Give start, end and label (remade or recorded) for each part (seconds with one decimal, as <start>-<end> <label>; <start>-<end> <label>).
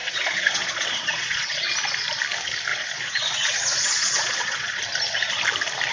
0.0-1.6 remade; 1.6-2.7 recorded; 2.7-4.8 remade; 4.8-5.9 recorded